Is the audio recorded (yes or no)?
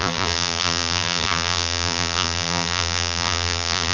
no